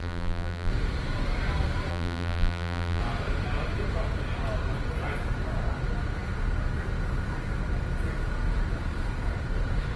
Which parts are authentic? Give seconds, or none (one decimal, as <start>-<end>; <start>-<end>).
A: 0.7-1.9; 3.0-10.0

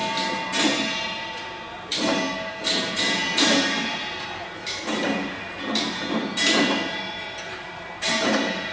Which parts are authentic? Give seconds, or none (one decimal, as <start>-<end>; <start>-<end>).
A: none

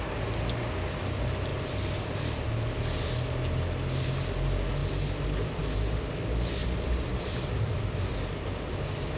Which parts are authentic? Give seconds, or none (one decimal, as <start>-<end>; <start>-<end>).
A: 0.0-4.8; 5.6-6.6